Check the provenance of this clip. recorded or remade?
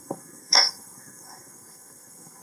remade